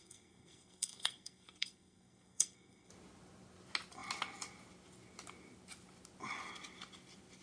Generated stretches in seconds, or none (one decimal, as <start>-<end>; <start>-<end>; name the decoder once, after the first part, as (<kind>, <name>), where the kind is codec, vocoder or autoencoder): 0.0-2.9 (codec, SNAC)